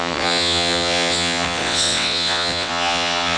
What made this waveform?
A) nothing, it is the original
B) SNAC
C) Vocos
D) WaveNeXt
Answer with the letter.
D